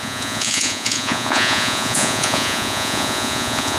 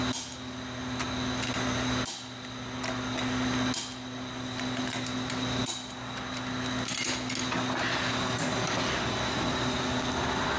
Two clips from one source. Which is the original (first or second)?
second